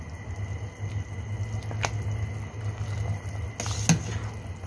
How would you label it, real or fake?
real